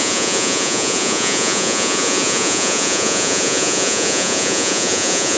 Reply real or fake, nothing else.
fake